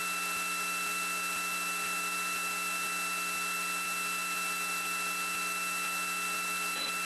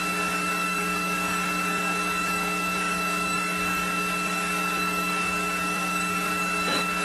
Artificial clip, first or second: second